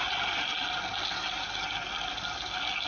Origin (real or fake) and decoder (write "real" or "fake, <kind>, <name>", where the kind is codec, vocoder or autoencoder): real